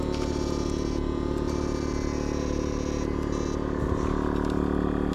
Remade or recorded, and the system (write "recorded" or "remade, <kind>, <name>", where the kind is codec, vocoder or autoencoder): recorded